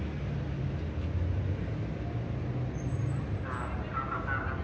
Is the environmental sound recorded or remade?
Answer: recorded